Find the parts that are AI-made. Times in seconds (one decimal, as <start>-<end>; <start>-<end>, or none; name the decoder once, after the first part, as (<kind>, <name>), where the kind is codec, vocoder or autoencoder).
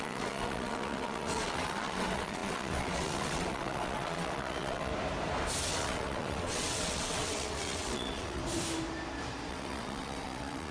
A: 0.0-4.9 (vocoder, WaveNeXt); 5.7-8.4; 9.5-10.7